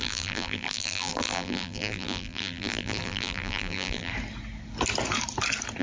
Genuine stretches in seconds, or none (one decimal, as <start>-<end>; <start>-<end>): 4.1-5.8